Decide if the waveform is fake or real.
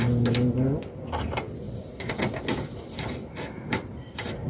real